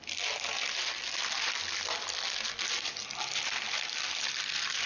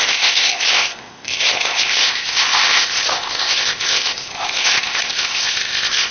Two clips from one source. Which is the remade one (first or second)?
second